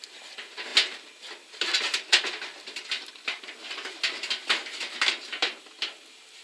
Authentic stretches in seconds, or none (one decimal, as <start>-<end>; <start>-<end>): 0.0-6.4